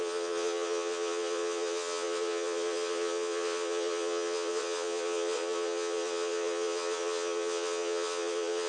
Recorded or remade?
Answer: remade